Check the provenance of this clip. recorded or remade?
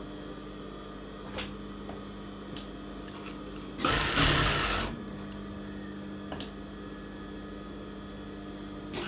recorded